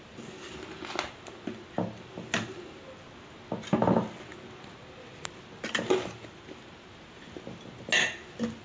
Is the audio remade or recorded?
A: recorded